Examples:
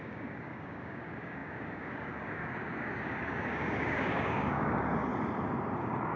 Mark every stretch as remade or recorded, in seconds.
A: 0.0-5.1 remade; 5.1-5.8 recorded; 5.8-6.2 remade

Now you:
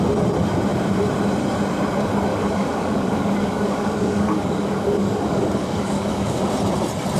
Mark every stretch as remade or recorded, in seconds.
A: 0.0-2.3 recorded; 2.3-6.4 remade; 6.4-7.2 recorded